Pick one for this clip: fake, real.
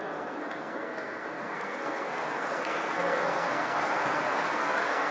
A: fake